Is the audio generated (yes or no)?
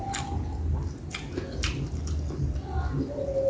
no